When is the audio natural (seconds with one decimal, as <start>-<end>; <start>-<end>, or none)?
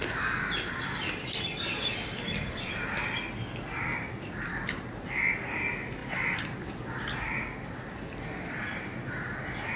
0.0-9.8